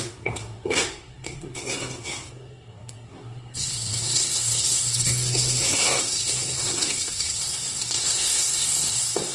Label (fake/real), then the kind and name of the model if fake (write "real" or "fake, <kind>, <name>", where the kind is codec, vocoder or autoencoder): fake, codec, SNAC